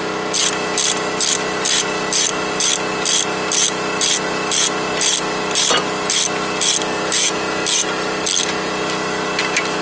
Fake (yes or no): no